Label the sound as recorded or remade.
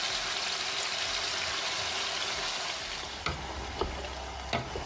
recorded